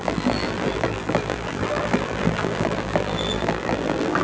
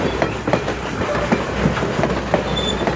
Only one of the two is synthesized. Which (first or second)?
first